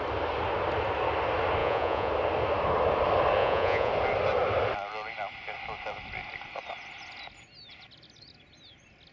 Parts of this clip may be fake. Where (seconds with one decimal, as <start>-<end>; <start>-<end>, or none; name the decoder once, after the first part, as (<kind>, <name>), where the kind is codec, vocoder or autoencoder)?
1.6-2.1 (vocoder, Vocos); 3.4-3.9